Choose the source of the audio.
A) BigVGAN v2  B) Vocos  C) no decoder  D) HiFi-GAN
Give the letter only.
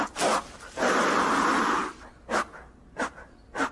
C